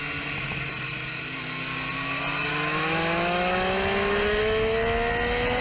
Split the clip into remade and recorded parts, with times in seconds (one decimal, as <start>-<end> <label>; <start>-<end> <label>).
0.0-2.5 recorded; 2.5-4.4 remade; 4.4-5.6 recorded